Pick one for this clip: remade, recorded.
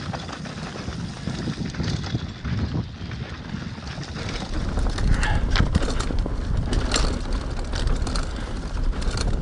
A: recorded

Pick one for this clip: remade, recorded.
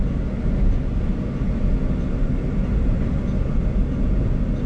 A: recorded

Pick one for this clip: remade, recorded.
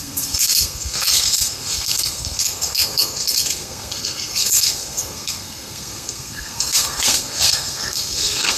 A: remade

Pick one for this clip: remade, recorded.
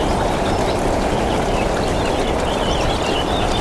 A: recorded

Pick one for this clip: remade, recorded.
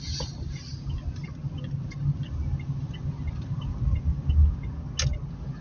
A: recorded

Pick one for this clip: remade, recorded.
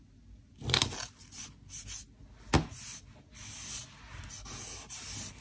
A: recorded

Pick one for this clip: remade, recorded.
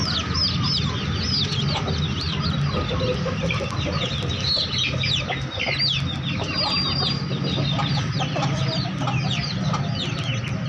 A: recorded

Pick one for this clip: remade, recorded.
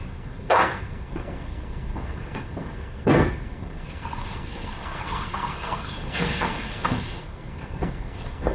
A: remade